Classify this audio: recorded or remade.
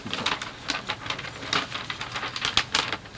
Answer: recorded